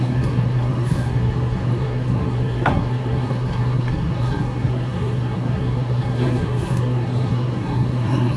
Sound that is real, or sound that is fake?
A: fake